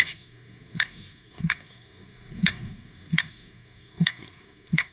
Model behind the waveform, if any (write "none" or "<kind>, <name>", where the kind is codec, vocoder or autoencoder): codec, SNAC